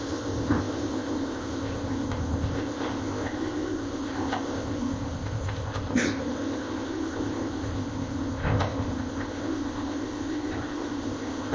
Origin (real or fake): fake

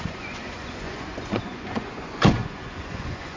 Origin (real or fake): fake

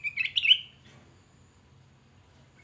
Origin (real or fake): real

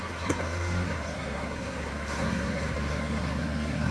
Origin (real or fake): fake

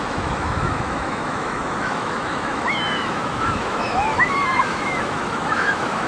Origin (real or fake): fake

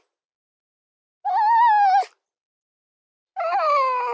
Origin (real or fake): real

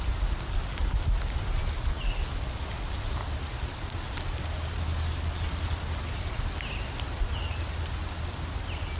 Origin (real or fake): real